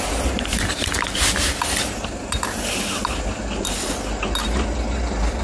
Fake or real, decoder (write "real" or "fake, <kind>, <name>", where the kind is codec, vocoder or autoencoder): real